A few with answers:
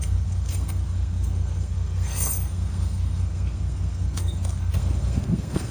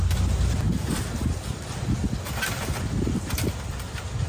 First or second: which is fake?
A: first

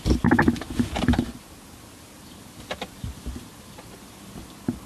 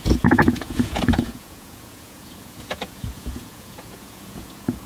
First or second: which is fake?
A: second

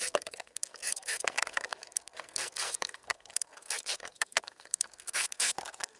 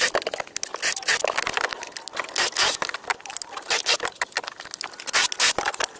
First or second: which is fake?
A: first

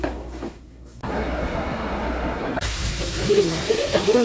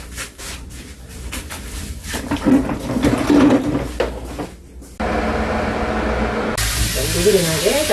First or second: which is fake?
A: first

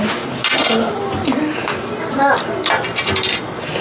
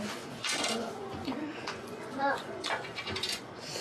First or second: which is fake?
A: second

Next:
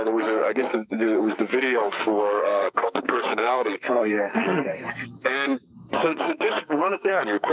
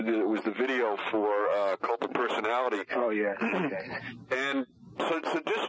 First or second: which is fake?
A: first